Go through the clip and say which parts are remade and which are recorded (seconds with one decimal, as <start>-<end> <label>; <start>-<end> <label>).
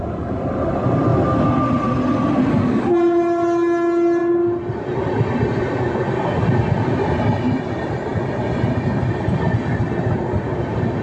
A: 0.0-11.0 recorded